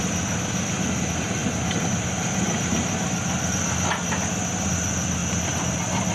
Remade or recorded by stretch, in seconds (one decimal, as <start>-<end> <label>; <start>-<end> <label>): 0.0-6.1 recorded